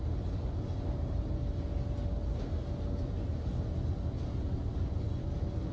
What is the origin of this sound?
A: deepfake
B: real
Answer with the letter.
B